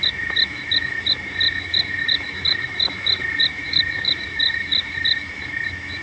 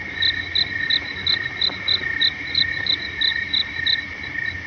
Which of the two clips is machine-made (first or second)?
first